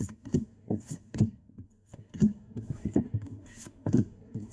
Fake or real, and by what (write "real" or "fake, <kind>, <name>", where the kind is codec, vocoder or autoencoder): fake, codec, SNAC